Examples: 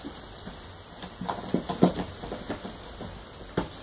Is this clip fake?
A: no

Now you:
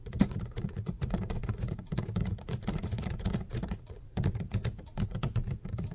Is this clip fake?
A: yes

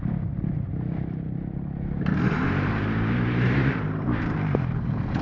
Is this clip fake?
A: yes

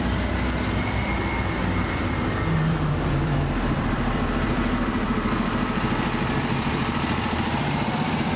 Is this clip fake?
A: yes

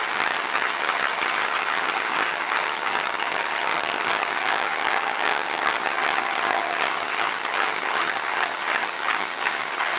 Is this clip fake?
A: yes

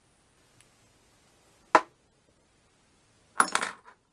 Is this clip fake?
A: no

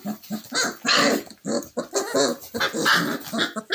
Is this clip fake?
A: no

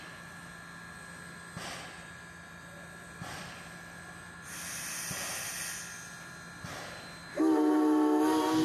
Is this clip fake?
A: no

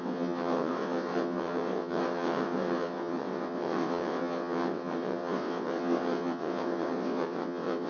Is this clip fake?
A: yes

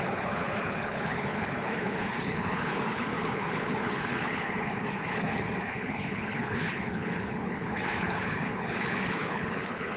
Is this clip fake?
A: yes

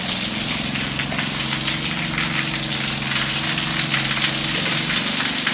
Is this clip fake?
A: no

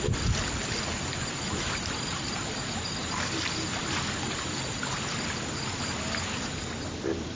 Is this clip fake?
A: no